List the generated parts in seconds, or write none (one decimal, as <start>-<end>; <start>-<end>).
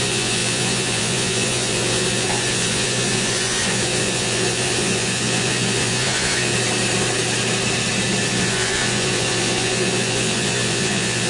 0.0-6.5; 8.3-11.3